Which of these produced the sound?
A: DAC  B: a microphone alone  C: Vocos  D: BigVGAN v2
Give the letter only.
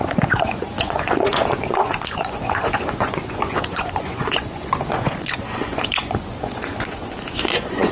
C